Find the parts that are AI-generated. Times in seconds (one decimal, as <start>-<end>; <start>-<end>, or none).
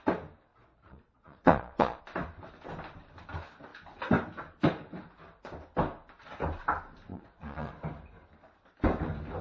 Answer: 0.5-2.0; 7.1-7.7